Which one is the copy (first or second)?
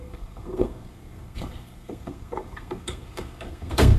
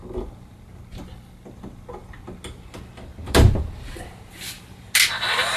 first